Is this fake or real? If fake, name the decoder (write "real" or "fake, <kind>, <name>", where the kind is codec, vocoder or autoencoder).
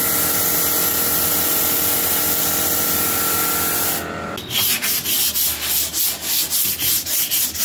real